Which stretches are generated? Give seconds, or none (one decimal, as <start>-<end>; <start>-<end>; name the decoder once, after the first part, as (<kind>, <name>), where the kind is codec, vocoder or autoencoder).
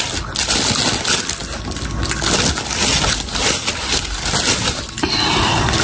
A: none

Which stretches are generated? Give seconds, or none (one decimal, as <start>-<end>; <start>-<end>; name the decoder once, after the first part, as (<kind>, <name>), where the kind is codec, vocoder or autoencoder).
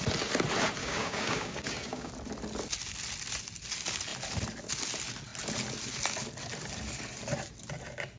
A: 0.8-2.1 (codec, DAC)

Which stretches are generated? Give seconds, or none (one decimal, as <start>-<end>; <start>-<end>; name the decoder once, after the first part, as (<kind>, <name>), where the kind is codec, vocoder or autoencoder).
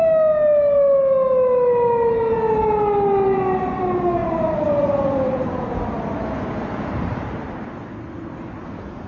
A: 4.2-7.7 (vocoder, BigVGAN v2)